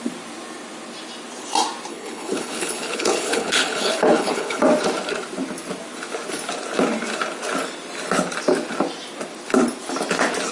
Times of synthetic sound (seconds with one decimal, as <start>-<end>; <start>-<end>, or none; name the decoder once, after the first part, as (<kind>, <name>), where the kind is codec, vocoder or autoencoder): 1.9-4.6 (codec, HILCodec)